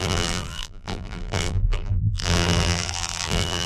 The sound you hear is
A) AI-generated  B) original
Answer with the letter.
A